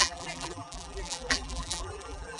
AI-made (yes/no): yes